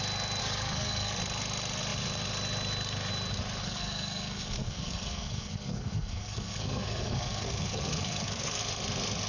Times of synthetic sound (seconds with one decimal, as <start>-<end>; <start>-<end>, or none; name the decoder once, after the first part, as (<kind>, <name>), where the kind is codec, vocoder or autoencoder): 0.4-1.2 (codec, SNAC); 3.6-8.6

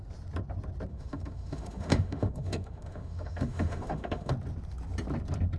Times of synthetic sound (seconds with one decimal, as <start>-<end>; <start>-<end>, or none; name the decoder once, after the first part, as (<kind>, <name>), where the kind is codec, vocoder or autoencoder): 0.9-4.3 (autoencoder, DAC-VAE)

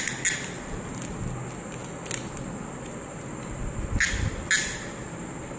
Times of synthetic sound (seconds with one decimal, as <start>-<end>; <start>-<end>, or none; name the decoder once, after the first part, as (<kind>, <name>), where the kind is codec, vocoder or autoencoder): none

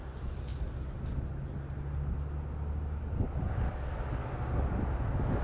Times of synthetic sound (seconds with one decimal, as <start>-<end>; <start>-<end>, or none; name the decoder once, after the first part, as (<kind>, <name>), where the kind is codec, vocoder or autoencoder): none

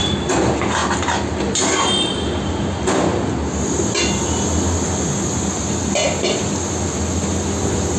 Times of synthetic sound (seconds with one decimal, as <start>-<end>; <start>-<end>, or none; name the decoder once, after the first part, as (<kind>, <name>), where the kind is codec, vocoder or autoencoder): none

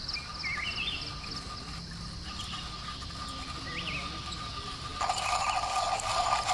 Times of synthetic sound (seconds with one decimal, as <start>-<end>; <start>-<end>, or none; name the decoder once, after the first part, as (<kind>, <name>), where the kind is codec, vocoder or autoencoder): none

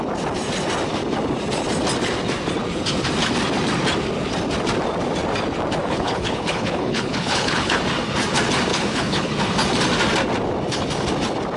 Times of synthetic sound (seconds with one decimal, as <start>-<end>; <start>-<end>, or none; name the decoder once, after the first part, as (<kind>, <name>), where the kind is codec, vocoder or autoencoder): 5.8-7.8 (codec, HILCodec); 8.7-9.3

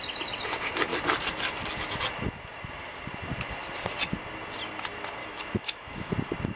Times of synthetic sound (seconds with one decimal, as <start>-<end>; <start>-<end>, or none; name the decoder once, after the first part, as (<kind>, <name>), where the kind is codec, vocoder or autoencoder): 5.2-6.1 (autoencoder, DAC-VAE)